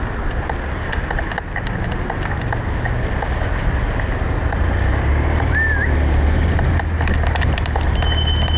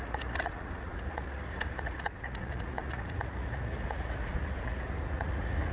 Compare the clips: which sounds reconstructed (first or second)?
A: second